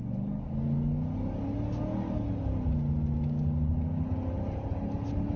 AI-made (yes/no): no